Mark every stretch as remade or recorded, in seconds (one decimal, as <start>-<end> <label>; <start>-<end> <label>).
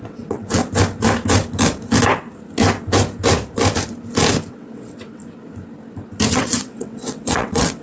0.0-0.6 remade; 0.6-4.5 recorded; 4.5-5.2 remade; 5.2-6.3 recorded; 6.3-7.8 remade